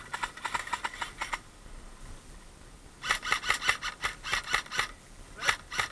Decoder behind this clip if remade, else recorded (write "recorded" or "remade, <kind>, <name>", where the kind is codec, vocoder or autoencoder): recorded